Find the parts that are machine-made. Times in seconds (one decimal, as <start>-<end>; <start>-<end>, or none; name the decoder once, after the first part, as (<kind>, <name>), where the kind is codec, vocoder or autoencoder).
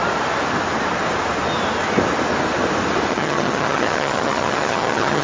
3.1-5.2 (vocoder, HiFi-GAN)